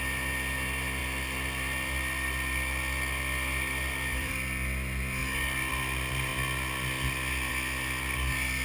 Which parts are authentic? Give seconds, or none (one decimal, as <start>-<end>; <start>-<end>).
0.0-1.0; 4.3-8.6